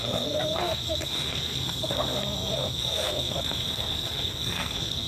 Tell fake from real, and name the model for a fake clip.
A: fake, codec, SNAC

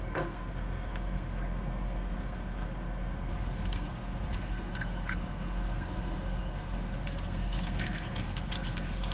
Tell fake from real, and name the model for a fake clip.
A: fake, codec, SNAC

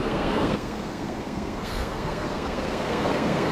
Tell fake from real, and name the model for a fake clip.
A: fake, codec, SNAC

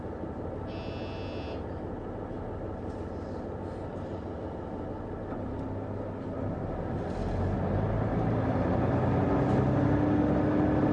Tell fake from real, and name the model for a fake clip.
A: real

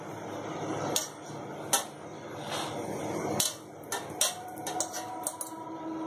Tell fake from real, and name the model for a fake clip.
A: real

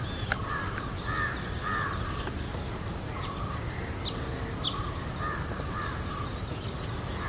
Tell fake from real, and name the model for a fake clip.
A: real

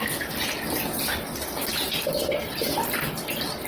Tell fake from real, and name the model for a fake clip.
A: real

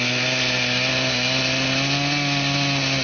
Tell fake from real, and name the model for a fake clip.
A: real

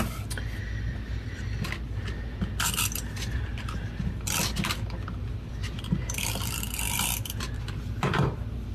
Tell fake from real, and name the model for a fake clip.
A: real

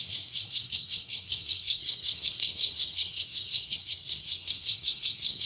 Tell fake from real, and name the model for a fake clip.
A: fake, codec, SNAC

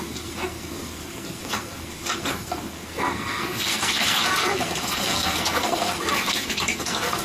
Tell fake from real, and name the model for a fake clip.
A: fake, codec, SNAC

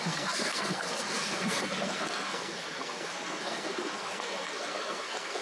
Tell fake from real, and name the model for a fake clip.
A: fake, codec, SNAC